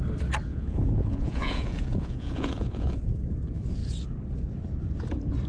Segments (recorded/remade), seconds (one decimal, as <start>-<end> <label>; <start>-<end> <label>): 0.0-0.5 recorded; 0.5-3.0 remade; 3.0-5.5 recorded